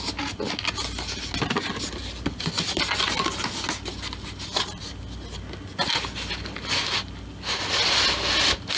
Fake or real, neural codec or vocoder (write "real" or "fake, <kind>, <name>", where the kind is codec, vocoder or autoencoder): real